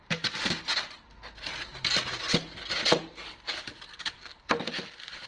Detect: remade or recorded recorded